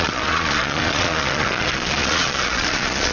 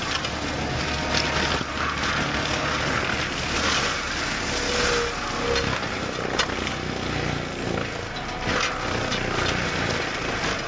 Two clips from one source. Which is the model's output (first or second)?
first